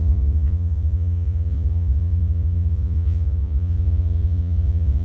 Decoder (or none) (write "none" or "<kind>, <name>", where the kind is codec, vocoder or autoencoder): vocoder, Vocos